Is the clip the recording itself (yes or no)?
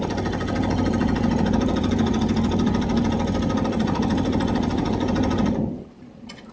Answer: no